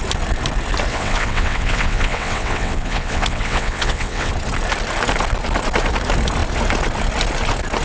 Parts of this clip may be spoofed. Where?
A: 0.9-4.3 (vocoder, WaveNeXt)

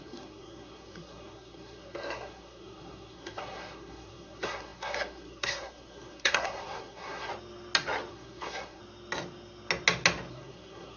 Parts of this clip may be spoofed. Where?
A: 0.0-7.3 (codec, SNAC); 8.1-8.8; 10.3-11.0

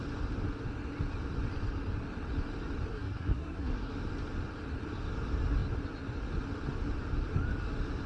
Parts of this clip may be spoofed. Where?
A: 2.9-3.9 (codec, SNAC)